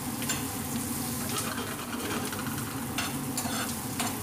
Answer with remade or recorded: recorded